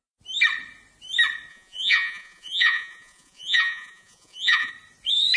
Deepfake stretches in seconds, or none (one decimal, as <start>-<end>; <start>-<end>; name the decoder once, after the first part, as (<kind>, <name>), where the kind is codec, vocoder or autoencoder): 1.5-4.7 (vocoder, Vocos)